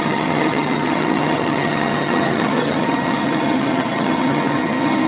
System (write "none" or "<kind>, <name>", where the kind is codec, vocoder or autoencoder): vocoder, HiFi-GAN